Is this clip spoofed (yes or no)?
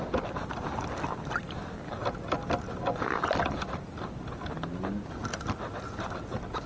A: no